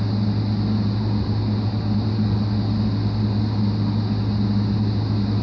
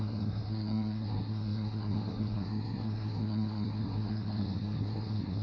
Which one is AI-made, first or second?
second